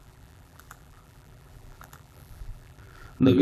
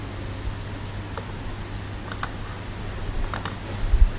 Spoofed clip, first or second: first